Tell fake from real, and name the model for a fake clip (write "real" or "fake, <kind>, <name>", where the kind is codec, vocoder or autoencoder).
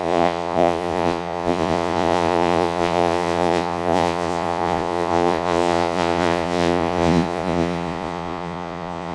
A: fake, vocoder, Vocos